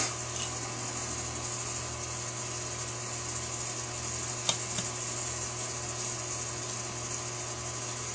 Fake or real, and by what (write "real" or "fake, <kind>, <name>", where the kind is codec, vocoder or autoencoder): real